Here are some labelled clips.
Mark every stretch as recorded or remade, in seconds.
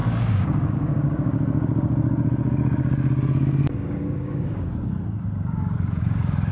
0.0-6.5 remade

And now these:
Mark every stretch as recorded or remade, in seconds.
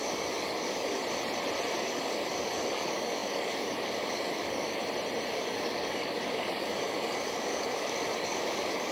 0.0-1.0 remade; 1.0-1.8 recorded; 1.8-4.8 remade; 4.8-5.3 recorded; 5.3-8.9 remade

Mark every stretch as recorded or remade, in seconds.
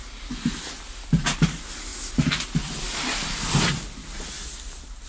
0.0-5.1 recorded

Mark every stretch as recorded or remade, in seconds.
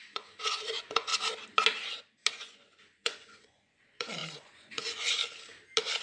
0.0-1.1 remade; 1.1-2.3 recorded; 2.3-5.2 remade; 5.2-6.0 recorded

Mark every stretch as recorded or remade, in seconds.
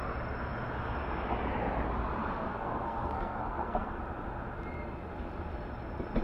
0.0-2.2 recorded; 2.2-4.0 remade; 4.0-6.2 recorded